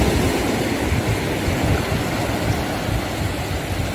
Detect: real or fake real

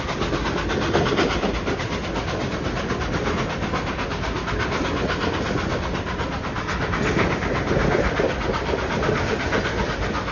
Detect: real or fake real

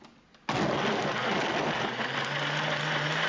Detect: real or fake real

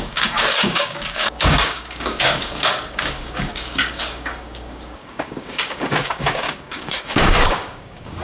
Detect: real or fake fake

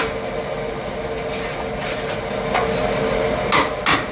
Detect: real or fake real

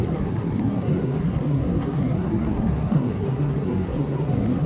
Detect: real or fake fake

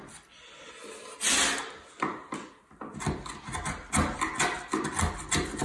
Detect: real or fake real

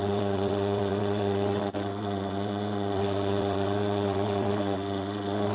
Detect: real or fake fake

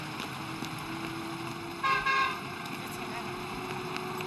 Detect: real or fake real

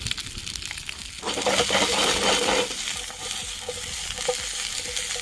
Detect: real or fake real